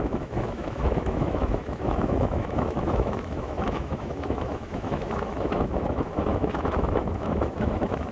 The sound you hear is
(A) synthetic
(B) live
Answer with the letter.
A